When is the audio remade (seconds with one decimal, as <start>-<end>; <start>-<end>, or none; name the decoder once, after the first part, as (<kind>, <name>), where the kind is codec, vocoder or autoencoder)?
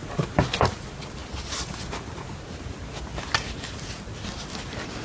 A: none